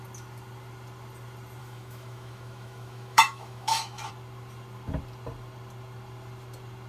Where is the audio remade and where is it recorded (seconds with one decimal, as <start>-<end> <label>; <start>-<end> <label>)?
0.0-1.6 recorded; 1.6-4.1 remade; 4.1-6.9 recorded